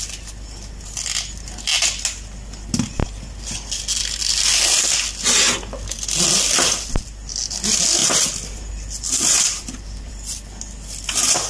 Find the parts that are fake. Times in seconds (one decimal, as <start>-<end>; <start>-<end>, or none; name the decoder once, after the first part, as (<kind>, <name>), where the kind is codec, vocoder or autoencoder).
8.0-10.1 (vocoder, BigVGAN v2)